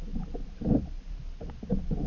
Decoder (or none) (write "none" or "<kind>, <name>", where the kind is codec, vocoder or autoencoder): none